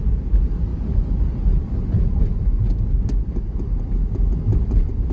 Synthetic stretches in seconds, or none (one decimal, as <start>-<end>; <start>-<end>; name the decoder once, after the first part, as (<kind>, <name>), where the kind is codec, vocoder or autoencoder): none